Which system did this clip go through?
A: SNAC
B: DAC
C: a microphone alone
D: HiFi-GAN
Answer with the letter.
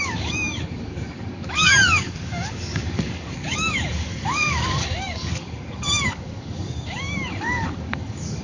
B